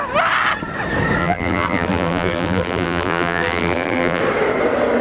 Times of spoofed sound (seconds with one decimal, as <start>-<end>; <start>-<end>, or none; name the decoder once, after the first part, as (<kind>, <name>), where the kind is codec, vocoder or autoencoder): 1.2-4.2 (vocoder, BigVGAN v2)